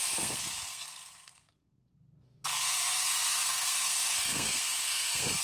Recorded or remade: remade